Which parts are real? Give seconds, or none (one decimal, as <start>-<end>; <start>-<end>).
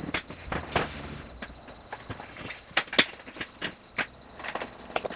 0.0-5.2